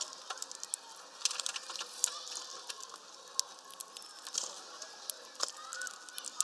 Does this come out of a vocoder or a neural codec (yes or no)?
no